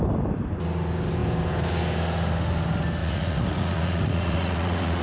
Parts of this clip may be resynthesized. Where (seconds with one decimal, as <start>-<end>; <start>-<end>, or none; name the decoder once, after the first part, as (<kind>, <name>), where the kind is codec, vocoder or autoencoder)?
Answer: 3.0-5.0 (vocoder, Vocos)